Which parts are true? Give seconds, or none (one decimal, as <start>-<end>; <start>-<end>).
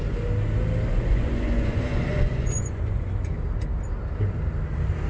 0.0-0.9; 3.1-5.1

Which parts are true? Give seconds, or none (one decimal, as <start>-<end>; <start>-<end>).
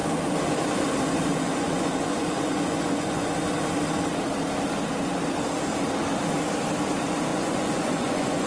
0.0-1.3; 3.4-7.3